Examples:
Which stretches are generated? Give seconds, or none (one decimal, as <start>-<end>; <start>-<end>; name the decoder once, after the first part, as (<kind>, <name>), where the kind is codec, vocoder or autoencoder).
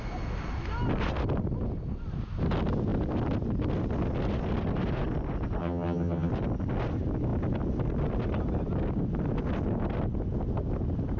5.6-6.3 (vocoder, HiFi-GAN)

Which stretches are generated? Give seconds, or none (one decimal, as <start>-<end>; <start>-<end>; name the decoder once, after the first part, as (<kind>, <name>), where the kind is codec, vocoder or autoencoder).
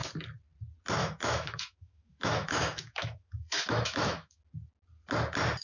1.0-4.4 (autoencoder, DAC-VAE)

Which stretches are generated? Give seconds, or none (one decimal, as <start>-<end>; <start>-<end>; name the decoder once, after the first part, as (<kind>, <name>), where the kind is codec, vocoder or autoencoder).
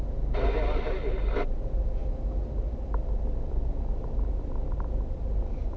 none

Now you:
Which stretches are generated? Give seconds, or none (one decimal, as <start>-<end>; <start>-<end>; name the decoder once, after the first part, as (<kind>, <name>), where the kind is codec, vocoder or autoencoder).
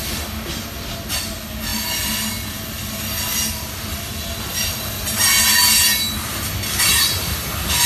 none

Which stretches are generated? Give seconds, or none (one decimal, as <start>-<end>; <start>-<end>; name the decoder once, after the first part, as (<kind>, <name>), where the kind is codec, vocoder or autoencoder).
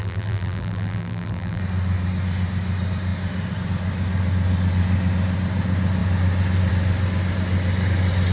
0.0-1.6 (vocoder, BigVGAN v2)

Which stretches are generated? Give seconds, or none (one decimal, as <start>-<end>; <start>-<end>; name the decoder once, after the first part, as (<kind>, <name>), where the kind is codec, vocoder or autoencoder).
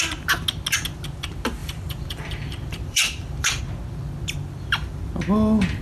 1.6-3.6 (vocoder, BigVGAN v2); 4.4-5.0